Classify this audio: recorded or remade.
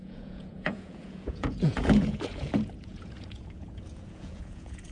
remade